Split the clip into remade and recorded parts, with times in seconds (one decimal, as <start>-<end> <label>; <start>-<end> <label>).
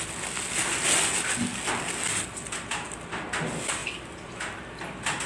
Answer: 0.0-5.3 recorded